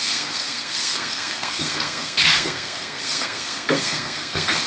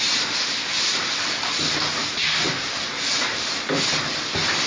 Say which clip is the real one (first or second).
second